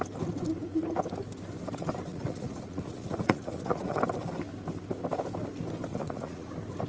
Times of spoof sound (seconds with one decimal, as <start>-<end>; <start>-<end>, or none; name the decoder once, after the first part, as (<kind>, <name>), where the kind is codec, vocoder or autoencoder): 2.1-4.0 (vocoder, Vocos); 5.9-6.5